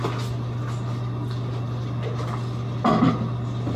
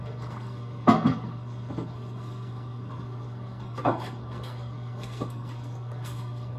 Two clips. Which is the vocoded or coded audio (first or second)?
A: second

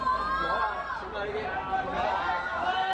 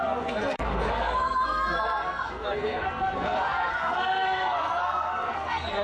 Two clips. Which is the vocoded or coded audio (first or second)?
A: second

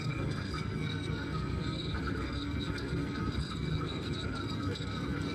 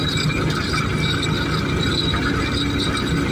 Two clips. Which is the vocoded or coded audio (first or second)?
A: first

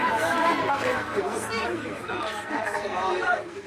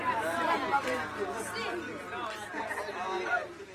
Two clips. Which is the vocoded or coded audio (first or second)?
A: first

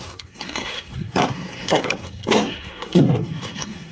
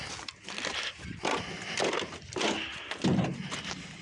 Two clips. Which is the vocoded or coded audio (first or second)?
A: first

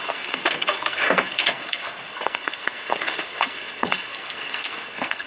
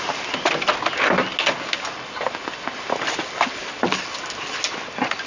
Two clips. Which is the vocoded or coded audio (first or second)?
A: first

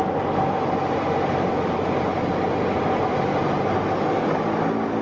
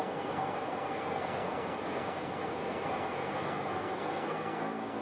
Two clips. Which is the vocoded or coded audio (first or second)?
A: second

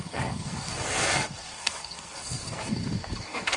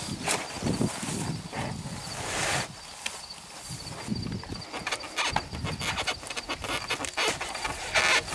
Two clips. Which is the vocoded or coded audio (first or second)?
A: first